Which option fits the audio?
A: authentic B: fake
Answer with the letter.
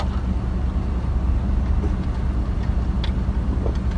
A